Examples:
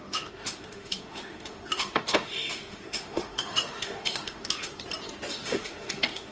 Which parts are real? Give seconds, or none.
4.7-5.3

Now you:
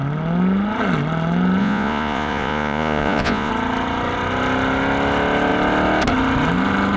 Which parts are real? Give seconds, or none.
0.0-1.6; 3.5-7.0

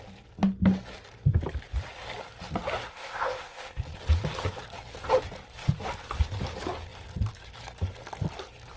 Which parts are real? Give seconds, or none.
0.0-2.9; 3.8-8.8

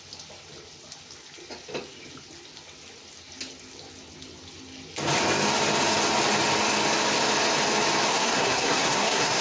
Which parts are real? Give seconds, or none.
0.0-8.1

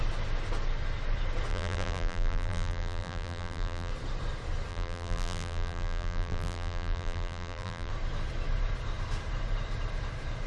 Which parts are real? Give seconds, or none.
0.0-1.5; 3.9-4.7; 7.9-10.5